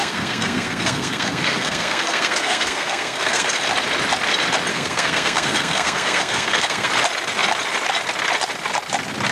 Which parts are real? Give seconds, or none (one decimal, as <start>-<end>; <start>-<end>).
3.6-4.7; 6.9-9.3